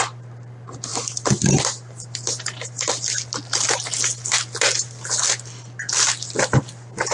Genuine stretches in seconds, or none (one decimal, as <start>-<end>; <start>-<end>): 0.0-7.1